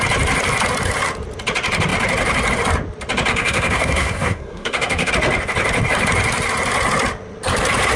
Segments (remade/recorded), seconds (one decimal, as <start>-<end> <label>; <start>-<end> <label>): 0.0-3.3 recorded; 3.3-5.1 remade; 5.1-8.0 recorded